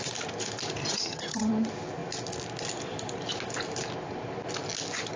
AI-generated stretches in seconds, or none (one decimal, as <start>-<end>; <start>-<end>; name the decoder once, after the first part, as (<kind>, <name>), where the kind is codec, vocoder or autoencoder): 0.8-1.5 (vocoder, HiFi-GAN)